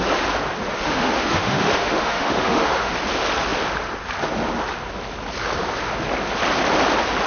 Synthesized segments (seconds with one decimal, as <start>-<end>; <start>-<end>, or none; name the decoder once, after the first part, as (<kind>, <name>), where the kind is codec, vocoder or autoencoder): 0.7-2.9 (autoencoder, DAC-VAE)